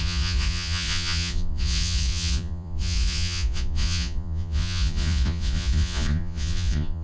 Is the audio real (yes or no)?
no